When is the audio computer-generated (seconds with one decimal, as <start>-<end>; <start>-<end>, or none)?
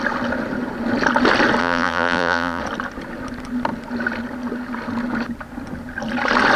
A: 1.6-2.6